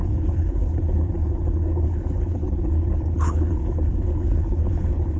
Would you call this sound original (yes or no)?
no